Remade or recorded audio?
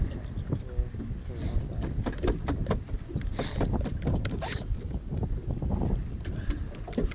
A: recorded